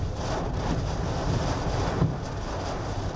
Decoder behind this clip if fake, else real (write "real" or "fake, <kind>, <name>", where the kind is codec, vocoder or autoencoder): real